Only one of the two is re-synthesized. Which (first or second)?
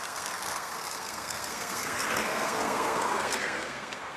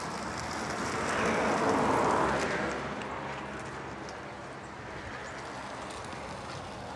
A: first